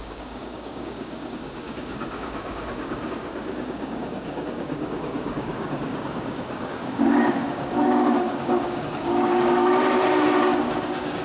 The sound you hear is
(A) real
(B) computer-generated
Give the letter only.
B